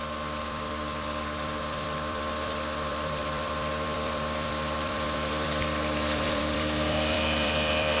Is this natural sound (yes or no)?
no